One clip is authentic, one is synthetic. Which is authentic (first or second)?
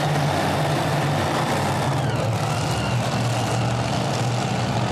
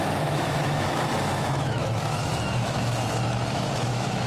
first